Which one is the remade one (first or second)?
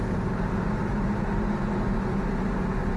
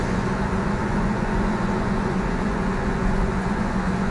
second